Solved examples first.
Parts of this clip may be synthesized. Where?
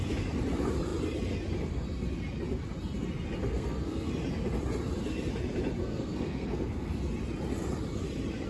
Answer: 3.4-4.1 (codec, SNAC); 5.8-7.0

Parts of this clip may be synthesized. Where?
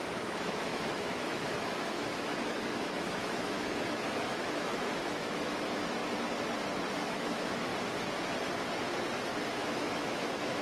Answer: 0.0-6.0 (autoencoder, DAC-VAE); 7.0-7.7; 9.5-10.6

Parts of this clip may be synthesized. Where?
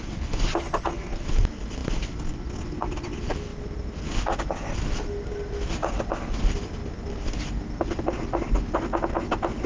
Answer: none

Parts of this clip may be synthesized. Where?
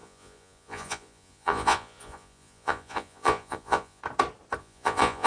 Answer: 0.0-4.0 (vocoder, Vocos); 4.6-5.3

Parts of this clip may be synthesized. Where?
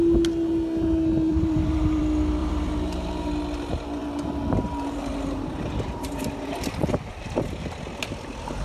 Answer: 1.3-2.0 (vocoder, BigVGAN v2); 2.4-3.3; 4.0-7.1